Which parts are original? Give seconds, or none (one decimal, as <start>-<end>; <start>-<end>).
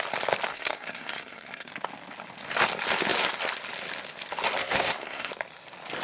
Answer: 0.0-0.5; 1.7-4.6; 5.3-6.0